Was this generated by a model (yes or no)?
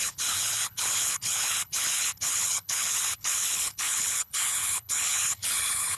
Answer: yes